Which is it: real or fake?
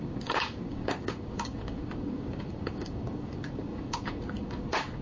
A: fake